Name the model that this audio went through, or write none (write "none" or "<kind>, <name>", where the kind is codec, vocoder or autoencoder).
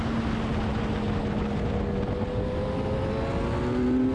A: none